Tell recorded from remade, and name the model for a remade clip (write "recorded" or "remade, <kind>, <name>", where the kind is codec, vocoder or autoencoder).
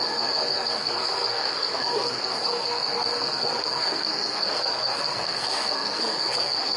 remade, codec, SNAC